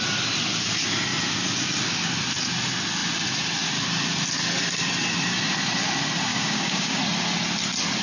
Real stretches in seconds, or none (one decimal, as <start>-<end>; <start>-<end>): 0.0-6.3; 7.0-8.0